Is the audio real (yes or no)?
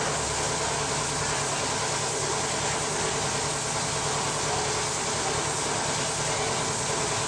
yes